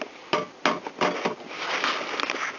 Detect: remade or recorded recorded